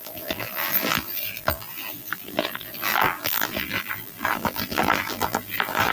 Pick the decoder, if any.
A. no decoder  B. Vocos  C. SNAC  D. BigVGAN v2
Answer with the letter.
D